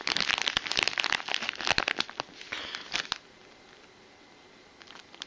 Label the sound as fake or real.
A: real